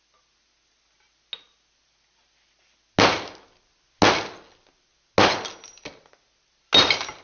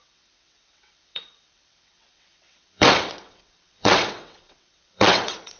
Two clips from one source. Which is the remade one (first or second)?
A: second